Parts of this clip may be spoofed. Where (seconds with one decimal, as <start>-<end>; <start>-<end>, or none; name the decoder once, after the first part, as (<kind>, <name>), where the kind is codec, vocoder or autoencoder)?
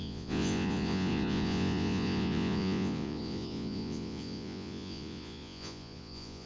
0.0-6.5 (vocoder, Vocos)